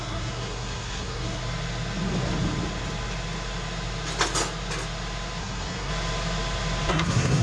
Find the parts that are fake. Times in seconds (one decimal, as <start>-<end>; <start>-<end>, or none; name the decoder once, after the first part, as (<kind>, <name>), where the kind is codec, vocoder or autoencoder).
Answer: 0.0-1.4 (codec, SNAC); 5.4-5.9; 6.9-7.4

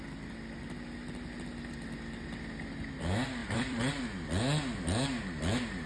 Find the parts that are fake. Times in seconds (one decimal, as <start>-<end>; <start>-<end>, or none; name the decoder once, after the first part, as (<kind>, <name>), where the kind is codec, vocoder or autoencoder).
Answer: 3.4-4.0 (vocoder, BigVGAN v2)

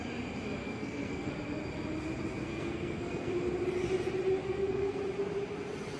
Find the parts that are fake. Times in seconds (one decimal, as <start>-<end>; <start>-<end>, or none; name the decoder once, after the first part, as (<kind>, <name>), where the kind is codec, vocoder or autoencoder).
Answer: 0.6-1.3 (codec, SNAC); 2.4-3.3; 4.4-5.0

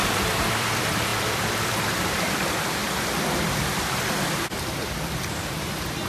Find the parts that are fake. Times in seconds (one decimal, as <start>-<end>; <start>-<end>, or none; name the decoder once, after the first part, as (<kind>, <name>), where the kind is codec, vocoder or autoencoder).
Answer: 0.0-2.8 (vocoder, BigVGAN v2); 3.5-6.1

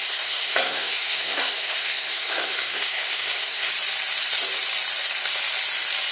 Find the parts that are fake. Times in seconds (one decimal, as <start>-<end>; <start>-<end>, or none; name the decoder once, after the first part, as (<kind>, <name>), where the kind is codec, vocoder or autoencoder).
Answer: 0.0-3.7 (codec, SNAC)

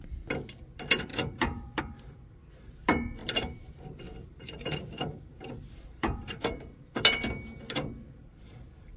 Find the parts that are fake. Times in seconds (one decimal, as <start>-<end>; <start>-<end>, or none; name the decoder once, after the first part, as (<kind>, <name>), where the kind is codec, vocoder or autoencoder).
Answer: 1.1-1.8 (vocoder, BigVGAN v2); 3.2-7.0

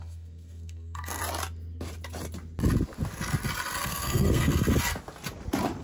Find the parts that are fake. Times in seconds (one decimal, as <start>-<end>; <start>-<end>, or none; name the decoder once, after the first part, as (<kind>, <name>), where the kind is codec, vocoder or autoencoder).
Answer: 0.0-1.2 (codec, SNAC); 3.8-4.5